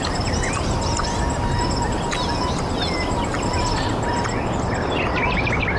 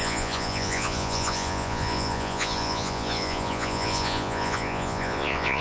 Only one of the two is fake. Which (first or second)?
second